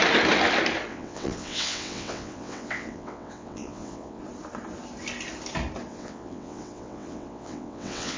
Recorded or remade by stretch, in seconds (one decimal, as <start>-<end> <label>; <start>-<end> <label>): 0.0-0.9 recorded; 0.9-4.2 remade; 4.2-5.9 recorded; 5.9-8.2 remade